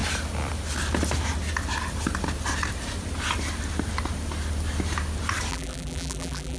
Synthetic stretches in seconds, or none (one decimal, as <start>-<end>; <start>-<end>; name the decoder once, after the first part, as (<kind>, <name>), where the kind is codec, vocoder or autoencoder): 5.5-6.6 (vocoder, BigVGAN v2)